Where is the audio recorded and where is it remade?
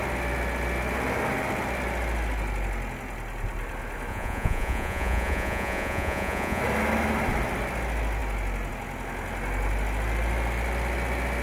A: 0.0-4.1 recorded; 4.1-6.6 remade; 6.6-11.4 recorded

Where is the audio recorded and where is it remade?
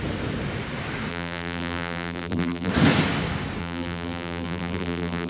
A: 0.0-1.1 recorded; 1.1-2.7 remade; 2.7-3.6 recorded; 3.6-5.3 remade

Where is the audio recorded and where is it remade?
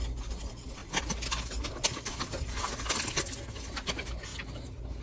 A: 0.0-5.0 recorded